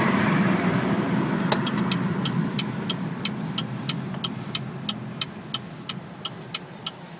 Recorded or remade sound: recorded